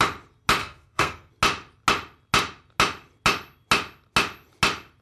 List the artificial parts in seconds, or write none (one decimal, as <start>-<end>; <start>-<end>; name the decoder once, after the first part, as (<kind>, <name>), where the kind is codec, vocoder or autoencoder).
0.6-1.3 (codec, SNAC)